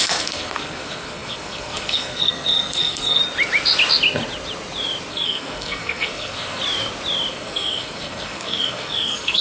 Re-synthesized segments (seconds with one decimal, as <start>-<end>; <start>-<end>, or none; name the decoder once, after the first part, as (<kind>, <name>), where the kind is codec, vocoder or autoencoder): 0.0-3.2 (codec, SNAC); 5.1-6.6; 7.3-9.4